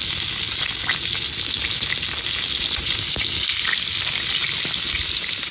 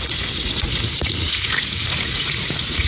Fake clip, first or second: second